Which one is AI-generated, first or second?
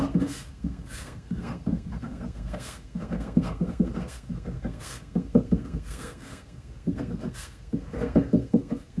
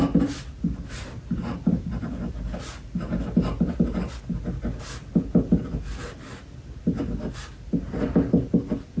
first